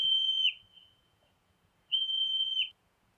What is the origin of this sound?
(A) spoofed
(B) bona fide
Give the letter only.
A